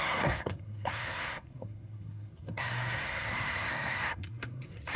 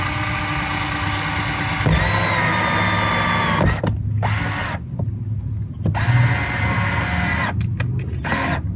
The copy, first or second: first